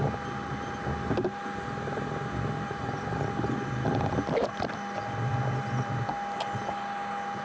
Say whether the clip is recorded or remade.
recorded